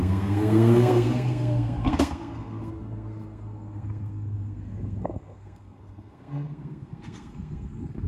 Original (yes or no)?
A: no